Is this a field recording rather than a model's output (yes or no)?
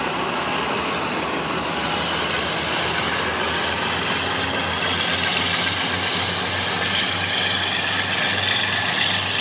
yes